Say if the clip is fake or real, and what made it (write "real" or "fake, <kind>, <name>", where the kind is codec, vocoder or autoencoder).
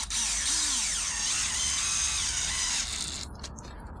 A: real